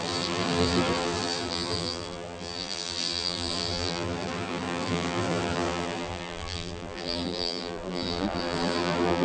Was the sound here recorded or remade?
remade